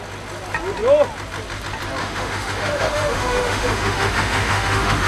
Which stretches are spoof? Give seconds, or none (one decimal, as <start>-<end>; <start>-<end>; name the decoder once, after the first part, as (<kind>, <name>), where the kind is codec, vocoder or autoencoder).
2.0-5.1 (autoencoder, DAC-VAE)